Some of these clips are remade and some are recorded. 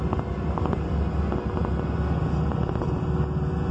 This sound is recorded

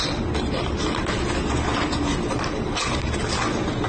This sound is recorded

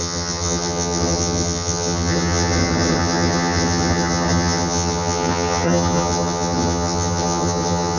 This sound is remade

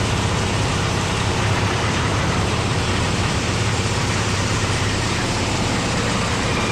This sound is remade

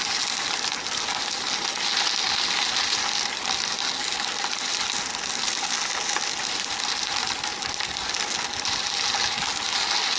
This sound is recorded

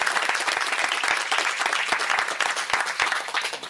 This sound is recorded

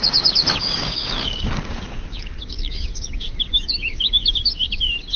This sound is remade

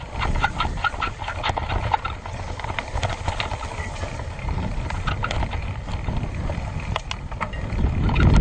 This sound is recorded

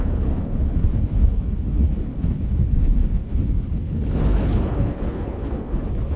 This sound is remade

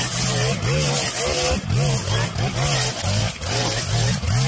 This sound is recorded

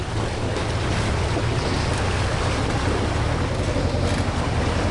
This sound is recorded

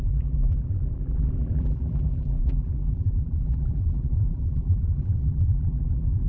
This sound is remade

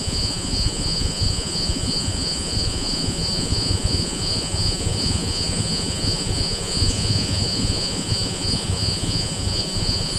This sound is remade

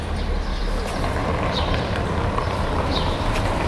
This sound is remade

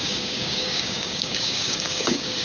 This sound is remade